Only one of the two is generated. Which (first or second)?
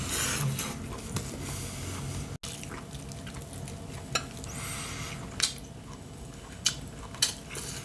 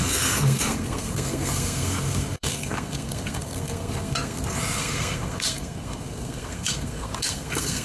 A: second